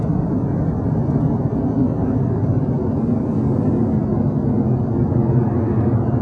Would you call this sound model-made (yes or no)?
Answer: no